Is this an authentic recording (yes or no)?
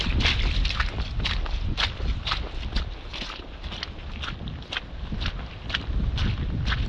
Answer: yes